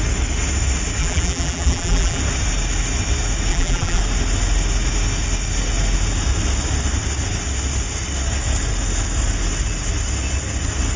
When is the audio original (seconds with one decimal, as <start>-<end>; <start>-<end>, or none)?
0.0-1.0; 2.2-3.5; 4.0-11.0